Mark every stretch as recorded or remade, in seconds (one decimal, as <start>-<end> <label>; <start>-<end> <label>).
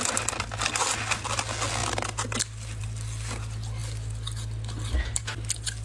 0.0-5.8 recorded